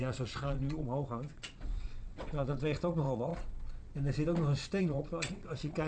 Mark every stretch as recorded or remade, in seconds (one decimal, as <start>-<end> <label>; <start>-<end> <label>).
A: 0.0-3.3 remade; 3.3-4.8 recorded; 4.8-5.9 remade